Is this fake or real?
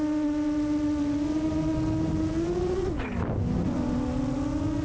real